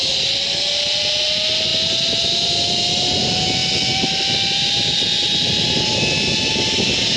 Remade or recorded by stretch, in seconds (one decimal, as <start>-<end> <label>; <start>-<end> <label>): 0.0-7.2 recorded

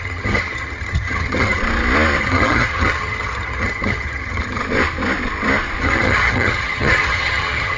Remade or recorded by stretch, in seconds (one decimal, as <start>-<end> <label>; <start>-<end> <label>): 0.0-1.6 remade; 1.6-2.2 recorded; 2.2-4.6 remade; 4.6-5.8 recorded; 5.8-7.8 remade

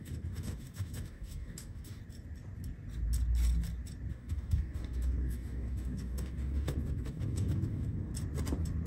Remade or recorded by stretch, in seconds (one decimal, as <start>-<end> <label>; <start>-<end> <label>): 0.0-2.0 remade; 2.0-4.1 recorded; 4.1-8.1 remade; 8.1-8.9 recorded

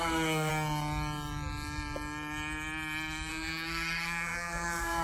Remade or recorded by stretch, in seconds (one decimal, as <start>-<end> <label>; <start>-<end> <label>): 0.0-0.5 remade; 0.5-3.3 recorded; 3.3-5.0 remade

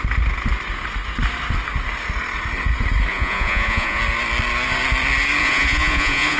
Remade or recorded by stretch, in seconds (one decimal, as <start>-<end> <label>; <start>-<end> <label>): 0.0-3.1 recorded; 3.1-4.0 remade; 4.0-5.4 recorded; 5.4-6.4 remade

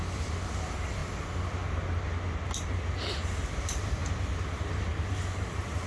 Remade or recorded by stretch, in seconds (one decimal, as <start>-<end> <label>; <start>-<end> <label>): 0.0-5.9 recorded

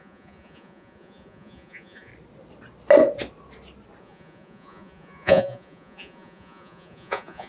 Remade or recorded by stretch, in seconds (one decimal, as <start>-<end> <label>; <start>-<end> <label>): 0.0-2.1 remade; 2.1-4.0 recorded; 4.0-7.5 remade

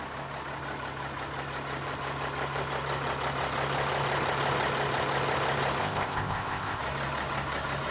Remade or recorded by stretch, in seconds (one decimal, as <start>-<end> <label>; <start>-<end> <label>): 0.0-5.8 recorded; 5.8-6.8 remade; 6.8-7.9 recorded